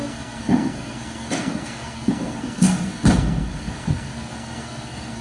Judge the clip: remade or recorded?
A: remade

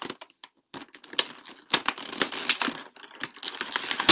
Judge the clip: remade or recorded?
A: recorded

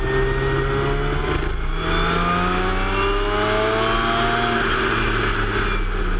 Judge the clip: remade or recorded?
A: recorded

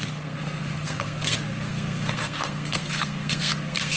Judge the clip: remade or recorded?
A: remade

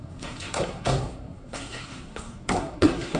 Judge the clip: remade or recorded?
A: remade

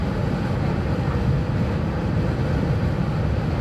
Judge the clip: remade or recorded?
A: recorded